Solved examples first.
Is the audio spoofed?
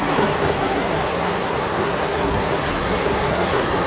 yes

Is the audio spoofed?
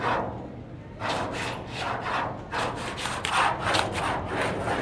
no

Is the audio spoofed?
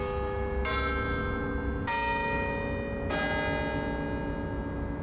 no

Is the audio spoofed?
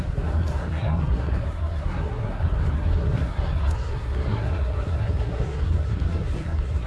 yes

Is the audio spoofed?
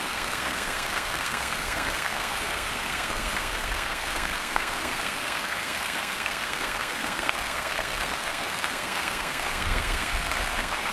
yes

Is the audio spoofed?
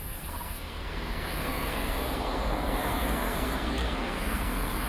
yes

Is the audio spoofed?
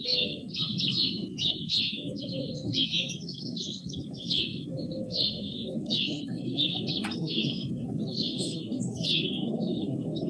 yes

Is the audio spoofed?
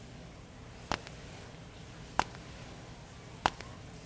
no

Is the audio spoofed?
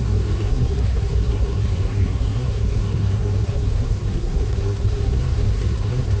yes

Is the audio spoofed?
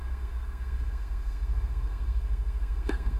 yes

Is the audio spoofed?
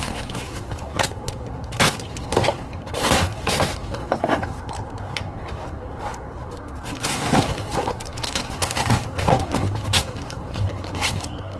yes